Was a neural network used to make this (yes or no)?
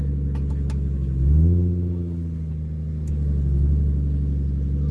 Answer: no